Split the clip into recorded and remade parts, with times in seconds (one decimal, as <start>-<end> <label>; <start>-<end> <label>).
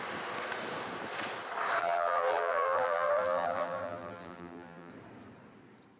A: 0.0-1.8 recorded; 1.8-4.9 remade; 4.9-6.0 recorded